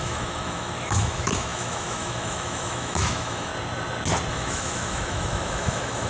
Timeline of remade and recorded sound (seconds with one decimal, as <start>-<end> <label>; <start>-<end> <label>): 0.0-3.5 remade; 3.5-4.3 recorded; 4.3-6.1 remade